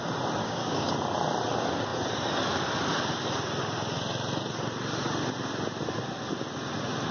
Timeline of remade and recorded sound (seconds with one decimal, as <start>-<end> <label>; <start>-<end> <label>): 0.0-0.4 recorded; 0.4-0.9 remade; 0.9-7.1 recorded